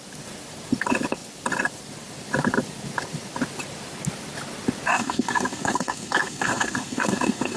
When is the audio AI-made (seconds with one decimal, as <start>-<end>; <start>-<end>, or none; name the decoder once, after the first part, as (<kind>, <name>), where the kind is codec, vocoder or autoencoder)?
4.9-7.6 (codec, SNAC)